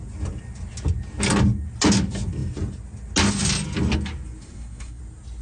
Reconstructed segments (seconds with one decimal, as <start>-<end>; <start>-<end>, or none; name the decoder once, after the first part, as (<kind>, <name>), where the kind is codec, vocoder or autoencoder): 4.4-5.0 (codec, SNAC)